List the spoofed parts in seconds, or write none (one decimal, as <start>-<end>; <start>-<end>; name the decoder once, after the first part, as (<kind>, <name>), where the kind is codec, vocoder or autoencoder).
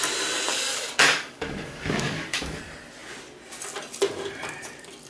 0.5-2.6 (codec, DAC)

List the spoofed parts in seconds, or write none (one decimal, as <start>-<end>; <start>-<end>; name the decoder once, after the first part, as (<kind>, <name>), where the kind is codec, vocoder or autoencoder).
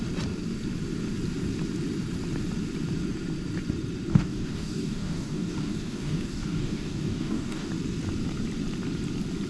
4.1-7.7 (codec, DAC)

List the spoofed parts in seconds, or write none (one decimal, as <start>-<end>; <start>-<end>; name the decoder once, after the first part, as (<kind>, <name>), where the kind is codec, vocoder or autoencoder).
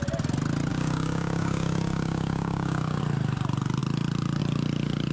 0.7-3.0 (codec, DAC)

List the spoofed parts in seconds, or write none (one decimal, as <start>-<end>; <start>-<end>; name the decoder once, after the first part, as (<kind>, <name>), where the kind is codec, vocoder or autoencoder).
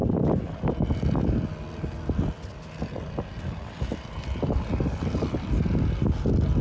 none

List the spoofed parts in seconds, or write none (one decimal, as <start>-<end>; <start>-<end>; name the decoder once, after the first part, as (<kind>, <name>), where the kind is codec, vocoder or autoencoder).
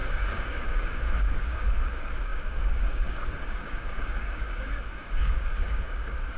0.0-6.4 (codec, DAC)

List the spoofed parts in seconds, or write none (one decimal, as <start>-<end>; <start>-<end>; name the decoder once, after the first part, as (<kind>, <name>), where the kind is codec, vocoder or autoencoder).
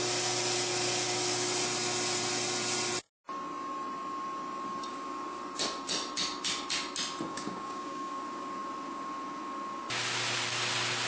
7.3-8.1 (codec, DAC)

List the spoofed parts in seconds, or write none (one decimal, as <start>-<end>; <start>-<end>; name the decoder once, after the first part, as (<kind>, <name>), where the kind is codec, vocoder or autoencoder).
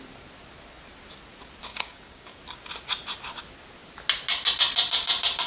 1.7-2.4 (codec, DAC)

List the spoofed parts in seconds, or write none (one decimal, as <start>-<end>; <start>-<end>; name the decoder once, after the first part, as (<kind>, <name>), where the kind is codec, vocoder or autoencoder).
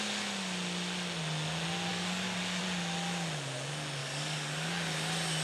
1.9-2.6 (codec, DAC); 4.0-4.7